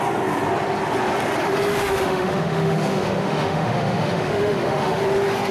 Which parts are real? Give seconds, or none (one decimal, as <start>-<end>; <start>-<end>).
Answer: 0.0-1.7; 5.0-5.5